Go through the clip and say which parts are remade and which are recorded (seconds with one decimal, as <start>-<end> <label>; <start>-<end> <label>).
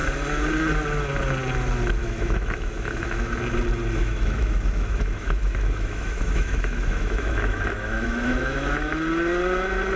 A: 0.0-2.0 recorded; 2.0-3.3 remade; 3.3-4.0 recorded; 4.0-8.9 remade; 8.9-10.0 recorded